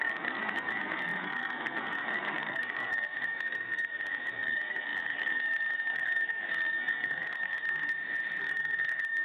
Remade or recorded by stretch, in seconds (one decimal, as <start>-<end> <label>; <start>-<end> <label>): 0.0-7.9 remade; 7.9-8.4 recorded; 8.4-9.2 remade